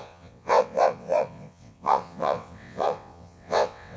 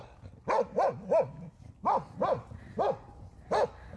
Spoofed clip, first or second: first